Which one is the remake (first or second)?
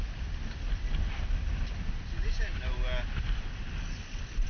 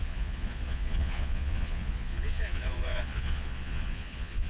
second